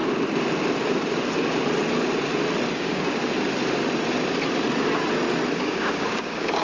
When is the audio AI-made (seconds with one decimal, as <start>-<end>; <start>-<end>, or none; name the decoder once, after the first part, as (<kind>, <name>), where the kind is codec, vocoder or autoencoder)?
2.7-3.2 (codec, DAC); 5.6-6.6